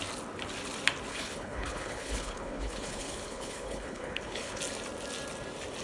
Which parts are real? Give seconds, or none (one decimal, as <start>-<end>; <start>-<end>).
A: 0.0-1.1; 4.6-5.8